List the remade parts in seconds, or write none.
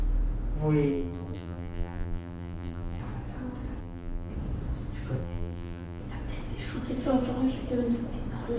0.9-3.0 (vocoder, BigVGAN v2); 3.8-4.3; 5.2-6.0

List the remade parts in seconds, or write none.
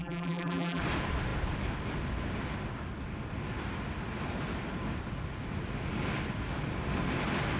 0.0-0.8 (vocoder, BigVGAN v2)